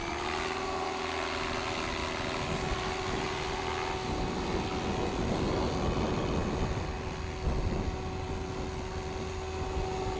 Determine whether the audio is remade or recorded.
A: recorded